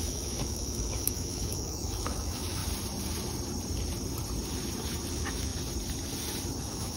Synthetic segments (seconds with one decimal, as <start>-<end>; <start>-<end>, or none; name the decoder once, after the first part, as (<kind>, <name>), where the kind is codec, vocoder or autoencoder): 0.0-2.6 (autoencoder, DAC-VAE); 5.1-5.5; 6.6-7.0